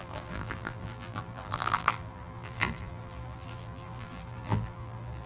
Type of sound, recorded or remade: remade